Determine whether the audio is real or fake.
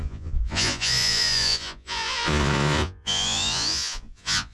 fake